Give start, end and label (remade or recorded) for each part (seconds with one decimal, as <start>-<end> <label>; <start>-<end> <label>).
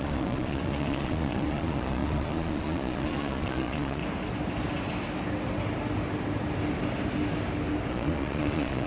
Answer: 0.0-4.0 remade; 4.0-7.9 recorded; 7.9-8.9 remade